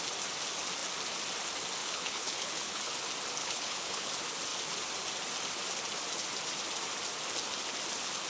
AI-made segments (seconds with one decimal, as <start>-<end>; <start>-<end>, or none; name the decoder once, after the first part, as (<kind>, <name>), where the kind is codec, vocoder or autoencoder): 1.8-2.9 (codec, HILCodec); 3.4-4.1